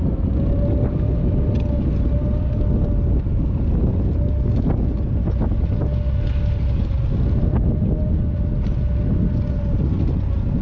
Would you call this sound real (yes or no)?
yes